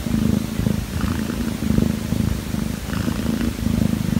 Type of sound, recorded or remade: recorded